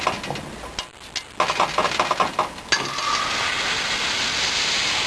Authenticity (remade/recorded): recorded